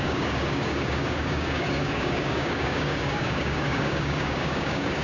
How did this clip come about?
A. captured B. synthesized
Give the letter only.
B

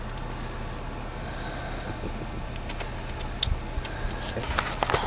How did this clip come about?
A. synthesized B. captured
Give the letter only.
B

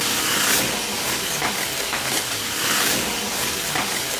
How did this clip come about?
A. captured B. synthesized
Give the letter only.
B